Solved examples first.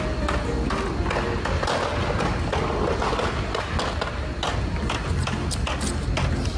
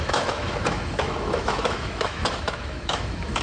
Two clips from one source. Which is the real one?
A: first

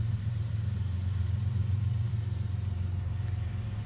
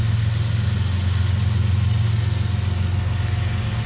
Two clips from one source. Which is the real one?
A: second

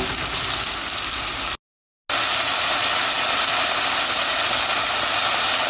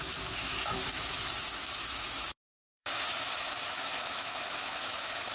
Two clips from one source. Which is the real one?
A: first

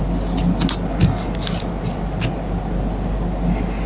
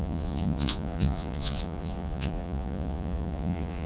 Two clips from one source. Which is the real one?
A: first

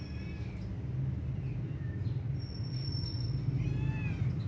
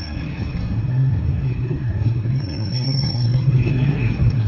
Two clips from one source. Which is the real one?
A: first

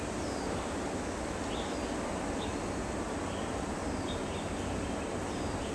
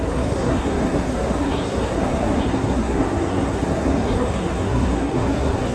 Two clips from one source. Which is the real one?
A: first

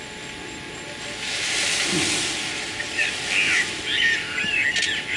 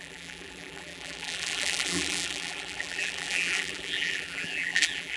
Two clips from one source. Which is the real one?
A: first